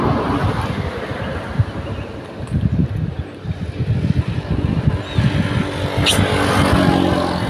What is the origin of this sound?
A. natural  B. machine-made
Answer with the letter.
A